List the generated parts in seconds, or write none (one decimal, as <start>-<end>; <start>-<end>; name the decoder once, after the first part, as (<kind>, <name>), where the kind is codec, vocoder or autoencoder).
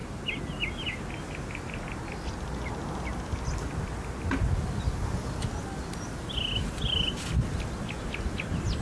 none